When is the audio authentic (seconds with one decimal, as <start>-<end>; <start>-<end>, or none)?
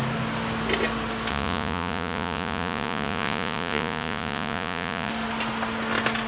0.0-1.3; 5.1-6.3